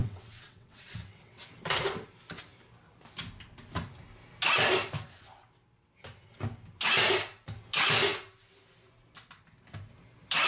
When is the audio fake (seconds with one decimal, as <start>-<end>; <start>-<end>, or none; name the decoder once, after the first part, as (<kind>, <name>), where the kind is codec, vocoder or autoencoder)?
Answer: 0.0-1.4 (vocoder, WaveNeXt)